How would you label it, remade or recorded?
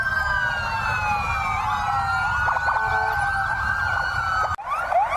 recorded